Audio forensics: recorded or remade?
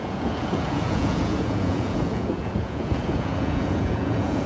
remade